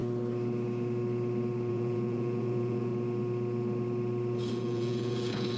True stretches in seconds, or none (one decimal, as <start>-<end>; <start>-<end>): 0.0-1.7; 2.9-4.5